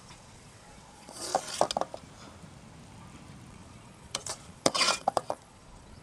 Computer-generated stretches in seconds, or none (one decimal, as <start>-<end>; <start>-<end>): 0.0-1.3; 3.5-6.0